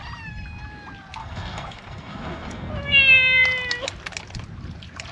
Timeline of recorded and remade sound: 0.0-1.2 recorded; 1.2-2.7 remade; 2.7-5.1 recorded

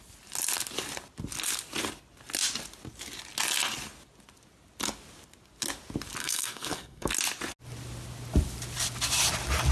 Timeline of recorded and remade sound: 0.0-6.2 recorded; 6.2-7.1 remade; 7.1-9.7 recorded

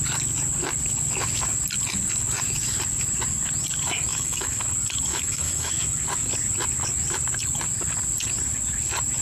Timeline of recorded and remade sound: 0.0-4.1 recorded; 4.1-4.6 remade; 4.6-5.1 recorded; 5.1-5.7 remade; 5.7-9.2 recorded

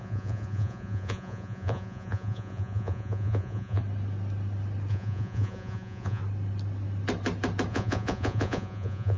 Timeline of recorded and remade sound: 0.0-3.8 remade; 3.8-4.9 recorded; 4.9-6.2 remade; 6.2-7.7 recorded; 7.7-9.2 remade

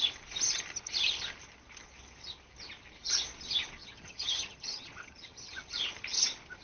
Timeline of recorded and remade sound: 0.0-3.8 recorded; 3.8-5.7 remade; 5.7-6.6 recorded

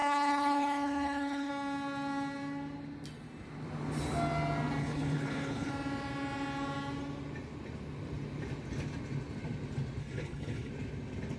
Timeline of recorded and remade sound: 0.0-1.5 remade; 1.5-4.8 recorded; 4.8-5.7 remade; 5.7-10.0 recorded; 10.0-10.7 remade; 10.7-11.4 recorded

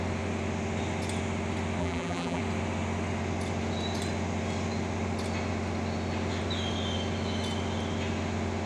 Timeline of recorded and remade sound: 0.0-1.8 recorded; 1.8-2.4 remade; 2.4-8.7 recorded